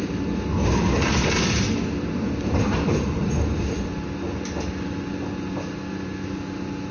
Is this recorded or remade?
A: recorded